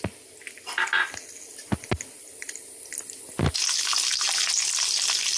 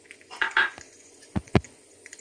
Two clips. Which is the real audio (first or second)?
first